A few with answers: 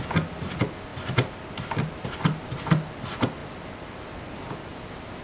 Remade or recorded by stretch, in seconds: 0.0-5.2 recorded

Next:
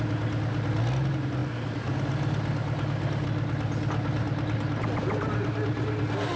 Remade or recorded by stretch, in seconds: 0.0-6.4 recorded

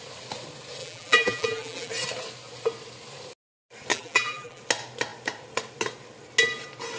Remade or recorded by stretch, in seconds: 0.0-0.8 recorded; 0.8-1.9 remade; 1.9-3.9 recorded; 3.9-4.6 remade; 4.6-7.0 recorded